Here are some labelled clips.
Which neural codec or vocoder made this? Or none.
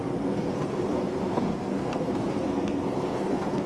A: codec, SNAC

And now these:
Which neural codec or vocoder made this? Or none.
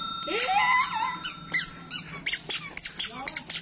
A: none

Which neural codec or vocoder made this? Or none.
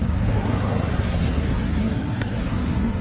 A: codec, SNAC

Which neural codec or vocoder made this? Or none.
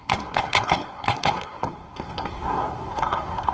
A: codec, SNAC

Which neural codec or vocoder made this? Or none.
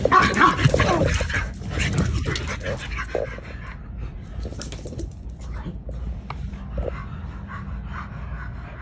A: none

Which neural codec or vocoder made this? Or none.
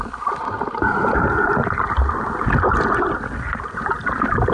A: none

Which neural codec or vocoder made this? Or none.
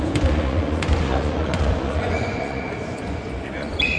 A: vocoder, Vocos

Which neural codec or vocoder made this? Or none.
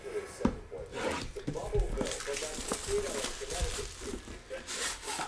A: none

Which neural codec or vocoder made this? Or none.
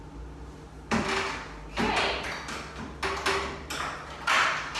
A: none